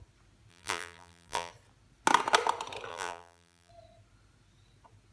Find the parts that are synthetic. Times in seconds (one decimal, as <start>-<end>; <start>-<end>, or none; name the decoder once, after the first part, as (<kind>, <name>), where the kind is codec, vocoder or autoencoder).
0.5-1.5 (vocoder, BigVGAN v2); 2.9-3.7